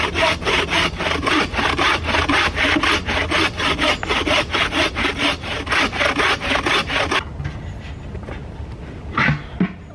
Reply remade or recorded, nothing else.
recorded